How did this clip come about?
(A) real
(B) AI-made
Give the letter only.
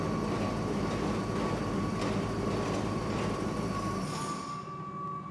A